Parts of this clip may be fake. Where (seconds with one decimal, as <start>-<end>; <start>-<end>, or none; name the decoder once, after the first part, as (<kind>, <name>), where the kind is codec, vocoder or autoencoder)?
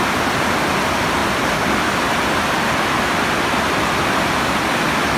none